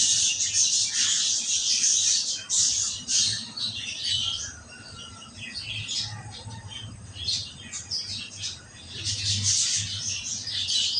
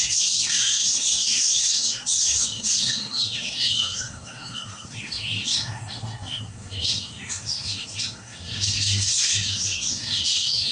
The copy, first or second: second